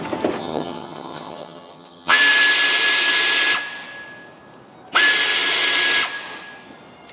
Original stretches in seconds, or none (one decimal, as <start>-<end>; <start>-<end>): 0.0-0.4; 2.2-7.1